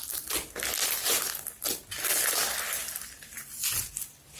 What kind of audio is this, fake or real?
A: real